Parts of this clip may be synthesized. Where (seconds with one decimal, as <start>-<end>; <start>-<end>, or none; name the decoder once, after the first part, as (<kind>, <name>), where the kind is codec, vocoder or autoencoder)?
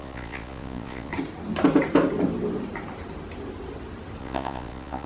0.0-1.1 (vocoder, Vocos); 4.2-5.1